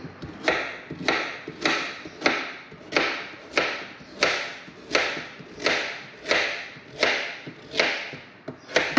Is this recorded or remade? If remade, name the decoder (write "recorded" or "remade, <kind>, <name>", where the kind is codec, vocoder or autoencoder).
recorded